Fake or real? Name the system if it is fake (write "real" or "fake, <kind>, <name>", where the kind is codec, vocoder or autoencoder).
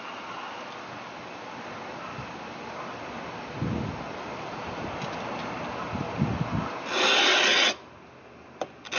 real